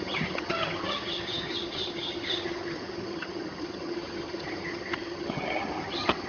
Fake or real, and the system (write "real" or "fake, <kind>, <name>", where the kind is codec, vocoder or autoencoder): fake, vocoder, HiFi-GAN